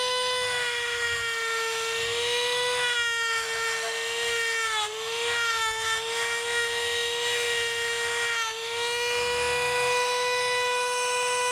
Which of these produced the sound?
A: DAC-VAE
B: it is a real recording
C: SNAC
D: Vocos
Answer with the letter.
A